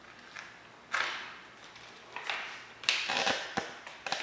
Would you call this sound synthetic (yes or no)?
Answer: no